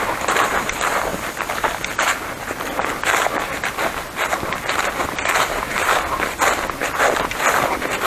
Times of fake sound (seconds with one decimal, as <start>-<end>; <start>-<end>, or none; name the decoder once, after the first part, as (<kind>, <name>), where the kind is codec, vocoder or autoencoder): none